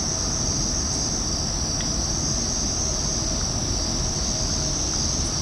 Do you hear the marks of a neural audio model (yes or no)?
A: no